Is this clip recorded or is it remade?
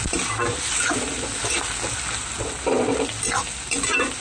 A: recorded